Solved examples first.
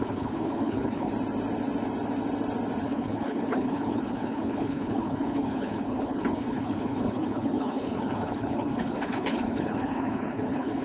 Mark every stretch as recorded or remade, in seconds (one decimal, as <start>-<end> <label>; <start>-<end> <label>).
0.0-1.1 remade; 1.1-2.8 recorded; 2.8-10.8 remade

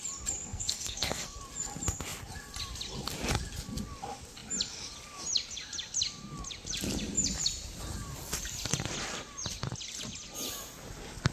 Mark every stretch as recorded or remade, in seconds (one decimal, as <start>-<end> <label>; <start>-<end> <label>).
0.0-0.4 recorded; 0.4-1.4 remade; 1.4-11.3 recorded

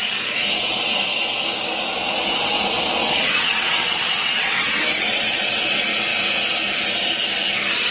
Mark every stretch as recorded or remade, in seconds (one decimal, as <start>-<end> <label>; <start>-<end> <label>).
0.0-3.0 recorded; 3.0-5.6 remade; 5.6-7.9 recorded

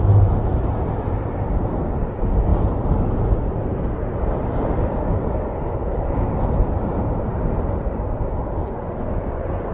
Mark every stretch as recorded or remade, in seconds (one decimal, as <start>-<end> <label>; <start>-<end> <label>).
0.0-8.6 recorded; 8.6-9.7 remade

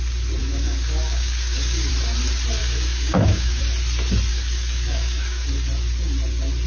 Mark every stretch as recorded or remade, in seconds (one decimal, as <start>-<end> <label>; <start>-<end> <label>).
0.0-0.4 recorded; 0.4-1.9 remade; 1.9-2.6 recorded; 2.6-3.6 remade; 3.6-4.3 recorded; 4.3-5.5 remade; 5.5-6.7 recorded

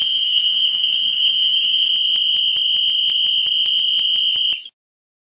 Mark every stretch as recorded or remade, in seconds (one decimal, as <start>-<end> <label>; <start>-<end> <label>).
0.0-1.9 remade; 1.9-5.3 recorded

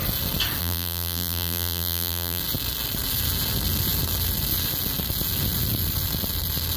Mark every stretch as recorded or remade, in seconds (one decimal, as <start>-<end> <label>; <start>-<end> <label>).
0.0-0.6 recorded; 0.6-2.4 remade; 2.4-6.8 recorded